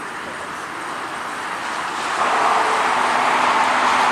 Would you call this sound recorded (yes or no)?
yes